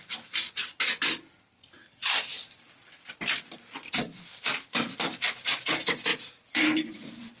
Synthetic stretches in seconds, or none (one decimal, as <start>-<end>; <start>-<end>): 4.1-5.1; 6.1-7.4